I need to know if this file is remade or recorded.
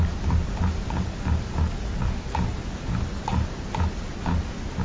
recorded